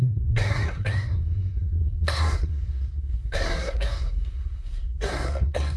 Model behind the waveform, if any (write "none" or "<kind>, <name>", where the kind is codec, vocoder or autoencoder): codec, SNAC